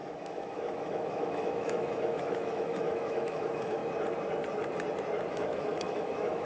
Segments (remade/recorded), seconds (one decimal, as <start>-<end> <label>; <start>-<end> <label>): 0.0-3.8 remade; 3.8-5.3 recorded; 5.3-6.5 remade